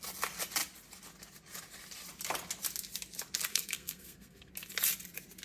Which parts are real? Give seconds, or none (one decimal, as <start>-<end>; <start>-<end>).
0.0-3.5; 4.5-5.4